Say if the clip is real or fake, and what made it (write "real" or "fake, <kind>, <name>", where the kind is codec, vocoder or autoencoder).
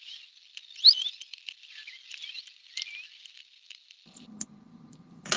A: real